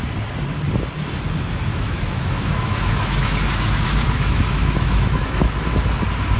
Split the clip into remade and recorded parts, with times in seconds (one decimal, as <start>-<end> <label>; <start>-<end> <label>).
0.0-1.7 recorded; 1.7-5.5 remade; 5.5-6.4 recorded